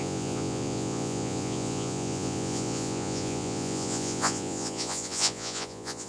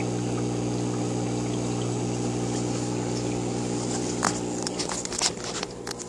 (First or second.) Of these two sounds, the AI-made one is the first